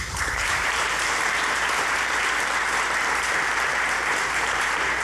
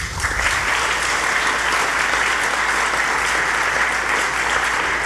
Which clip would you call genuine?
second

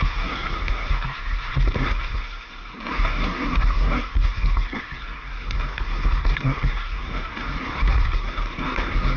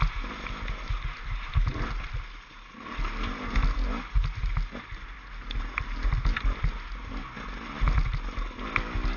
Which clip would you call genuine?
second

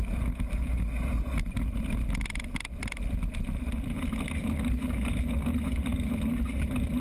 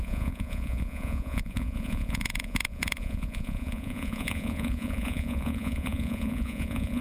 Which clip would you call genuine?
first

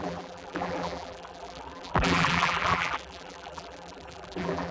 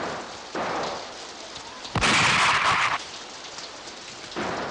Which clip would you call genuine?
second